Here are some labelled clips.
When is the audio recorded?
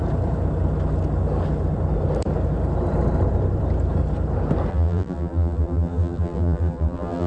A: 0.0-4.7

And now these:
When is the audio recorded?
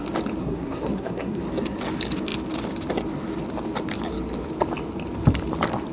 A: 0.0-0.4; 1.4-5.9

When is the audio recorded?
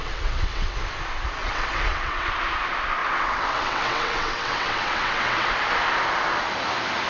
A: 0.8-1.4; 2.3-3.0; 5.5-7.1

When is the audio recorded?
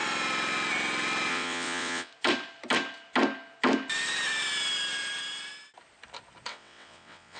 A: 0.0-1.3; 2.1-6.5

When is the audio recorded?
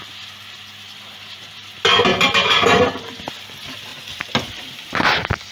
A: 0.0-5.5